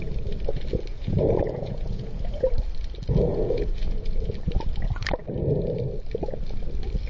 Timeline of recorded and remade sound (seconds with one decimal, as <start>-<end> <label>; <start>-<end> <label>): 0.0-0.9 recorded; 0.9-2.5 remade; 2.5-3.3 recorded; 3.3-4.2 remade; 4.2-7.1 recorded